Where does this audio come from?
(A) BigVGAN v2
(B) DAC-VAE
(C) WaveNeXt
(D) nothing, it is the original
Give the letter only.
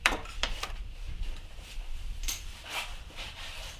A